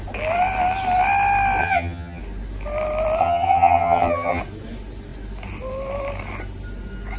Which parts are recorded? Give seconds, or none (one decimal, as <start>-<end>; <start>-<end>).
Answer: 0.0-1.6; 2.2-3.2; 4.4-7.2